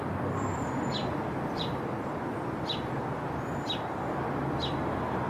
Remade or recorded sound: recorded